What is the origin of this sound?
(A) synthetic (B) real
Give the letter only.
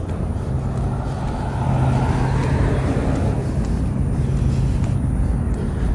B